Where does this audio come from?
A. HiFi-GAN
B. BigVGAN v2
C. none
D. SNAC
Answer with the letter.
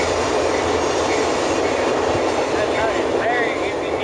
C